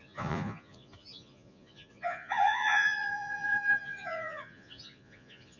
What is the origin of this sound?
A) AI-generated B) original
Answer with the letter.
A